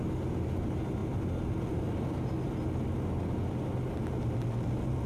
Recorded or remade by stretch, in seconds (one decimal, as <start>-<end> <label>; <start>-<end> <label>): 0.0-5.1 recorded